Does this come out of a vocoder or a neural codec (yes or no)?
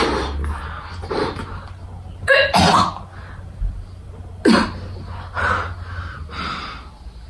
no